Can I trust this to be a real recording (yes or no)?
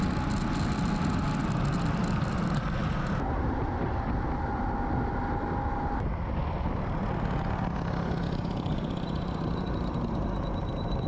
yes